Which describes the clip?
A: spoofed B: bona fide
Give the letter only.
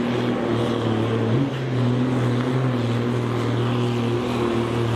B